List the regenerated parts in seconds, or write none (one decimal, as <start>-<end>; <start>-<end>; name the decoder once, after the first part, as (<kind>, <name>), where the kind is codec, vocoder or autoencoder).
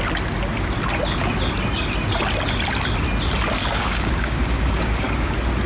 3.6-5.3 (codec, DAC)